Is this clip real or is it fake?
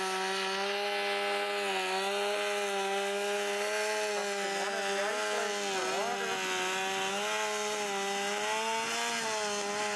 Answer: real